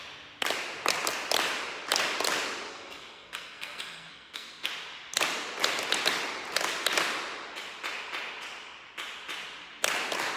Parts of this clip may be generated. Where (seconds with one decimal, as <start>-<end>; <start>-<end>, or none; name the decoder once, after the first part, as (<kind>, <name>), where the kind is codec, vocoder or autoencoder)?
2.7-4.7 (codec, SNAC)